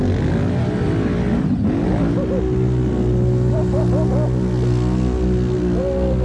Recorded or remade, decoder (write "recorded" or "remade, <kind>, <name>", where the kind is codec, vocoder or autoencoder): recorded